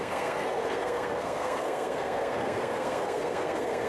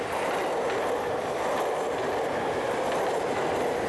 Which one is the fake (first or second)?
first